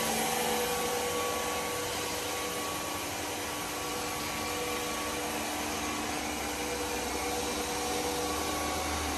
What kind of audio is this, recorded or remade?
recorded